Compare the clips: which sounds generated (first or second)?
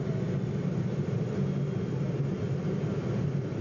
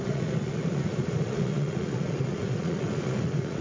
second